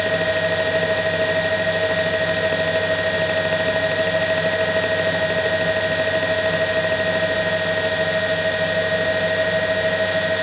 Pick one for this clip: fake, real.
real